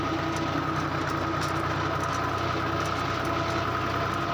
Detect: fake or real real